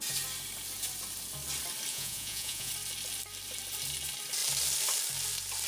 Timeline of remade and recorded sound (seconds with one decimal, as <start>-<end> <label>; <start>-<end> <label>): 0.0-1.9 recorded; 1.9-2.7 remade; 2.7-5.7 recorded